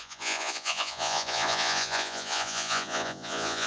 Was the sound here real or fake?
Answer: fake